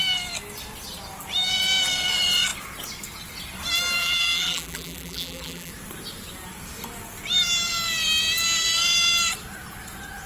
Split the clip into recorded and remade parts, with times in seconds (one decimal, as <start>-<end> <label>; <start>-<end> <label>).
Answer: 0.0-4.0 recorded; 4.0-5.7 remade; 5.7-10.3 recorded